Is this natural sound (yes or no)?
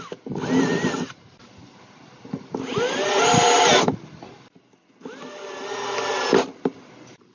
yes